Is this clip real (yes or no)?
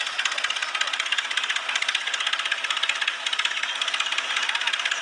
yes